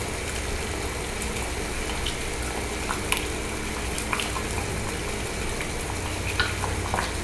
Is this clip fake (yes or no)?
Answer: no